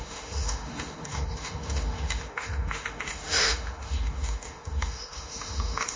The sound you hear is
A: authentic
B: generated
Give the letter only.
B